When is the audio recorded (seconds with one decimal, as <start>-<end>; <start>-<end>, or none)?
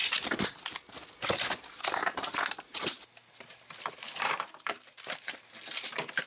0.0-2.0; 5.5-6.3